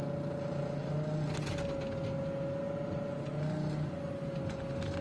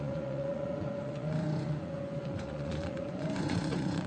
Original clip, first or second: first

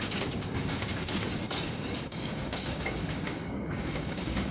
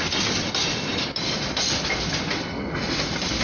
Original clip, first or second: second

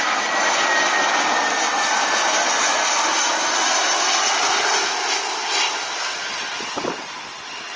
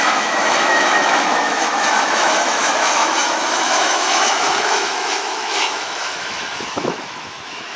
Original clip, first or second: first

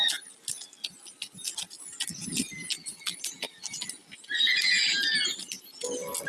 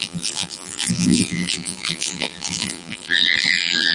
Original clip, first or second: first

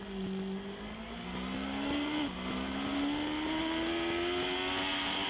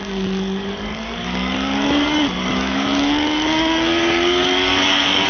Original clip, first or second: first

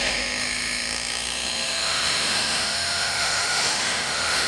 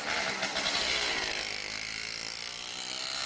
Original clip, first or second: second